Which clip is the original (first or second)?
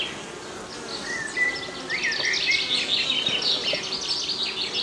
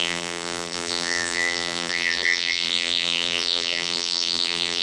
first